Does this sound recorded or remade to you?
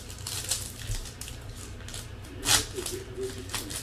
recorded